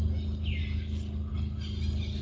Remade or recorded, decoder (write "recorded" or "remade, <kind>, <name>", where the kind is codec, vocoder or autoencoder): recorded